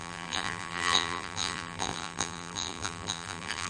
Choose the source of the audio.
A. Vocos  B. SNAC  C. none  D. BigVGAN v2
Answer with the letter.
D